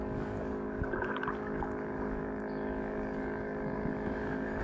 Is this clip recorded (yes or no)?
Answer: no